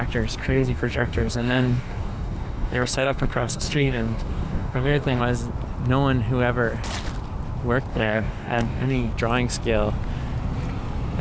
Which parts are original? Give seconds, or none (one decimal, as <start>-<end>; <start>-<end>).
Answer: 0.0-0.4; 5.2-7.9; 9.1-11.2